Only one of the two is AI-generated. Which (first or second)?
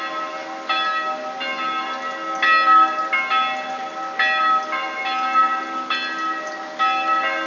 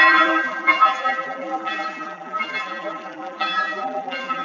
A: second